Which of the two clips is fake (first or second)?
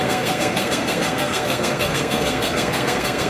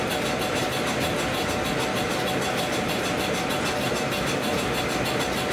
first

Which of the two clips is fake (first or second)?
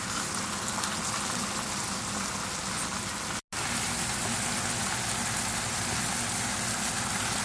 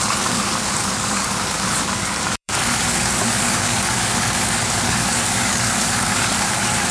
second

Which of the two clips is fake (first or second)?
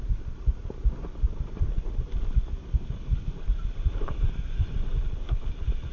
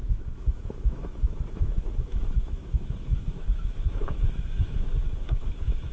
second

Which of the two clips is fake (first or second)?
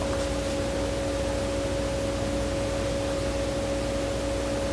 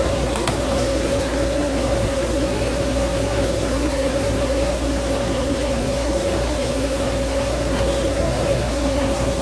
second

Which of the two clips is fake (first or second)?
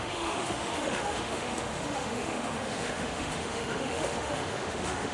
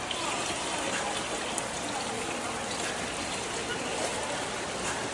first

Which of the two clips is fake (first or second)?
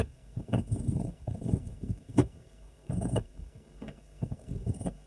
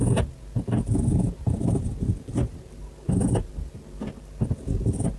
first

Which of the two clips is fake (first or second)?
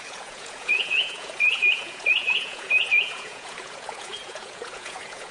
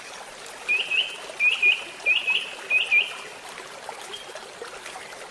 first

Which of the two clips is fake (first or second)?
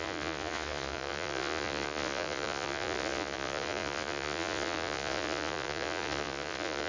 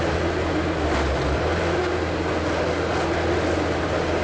first